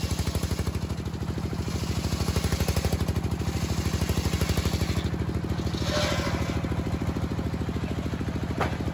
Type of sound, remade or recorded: recorded